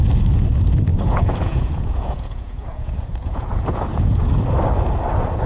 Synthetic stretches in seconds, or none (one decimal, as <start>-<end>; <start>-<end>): 0.9-4.2